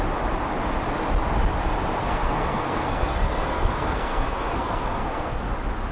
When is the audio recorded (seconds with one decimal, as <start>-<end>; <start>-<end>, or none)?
0.0-2.0; 5.5-5.9